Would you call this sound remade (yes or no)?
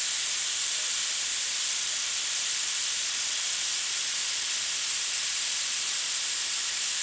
yes